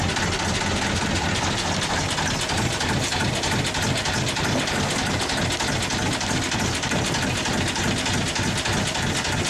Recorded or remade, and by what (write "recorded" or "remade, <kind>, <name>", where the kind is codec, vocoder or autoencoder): recorded